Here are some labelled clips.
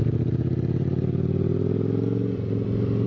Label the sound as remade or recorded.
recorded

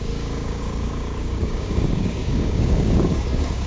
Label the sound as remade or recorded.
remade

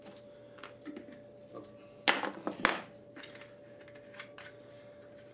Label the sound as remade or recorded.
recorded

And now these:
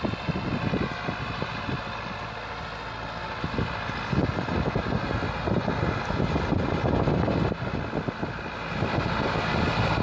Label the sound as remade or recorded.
recorded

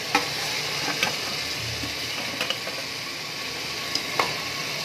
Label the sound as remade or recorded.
recorded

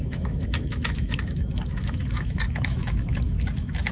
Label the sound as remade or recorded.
remade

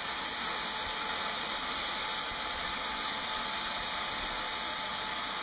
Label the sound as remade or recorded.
recorded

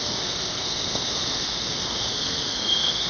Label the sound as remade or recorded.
remade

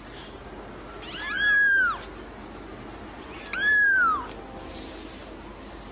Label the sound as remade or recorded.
recorded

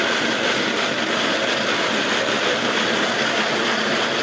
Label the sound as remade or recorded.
recorded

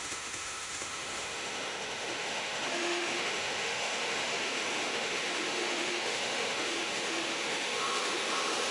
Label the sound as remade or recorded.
remade